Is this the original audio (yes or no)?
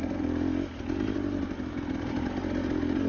yes